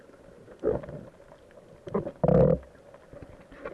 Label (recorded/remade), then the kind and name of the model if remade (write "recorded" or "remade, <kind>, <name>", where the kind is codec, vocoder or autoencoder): recorded